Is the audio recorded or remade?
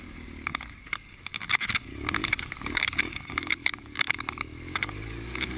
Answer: remade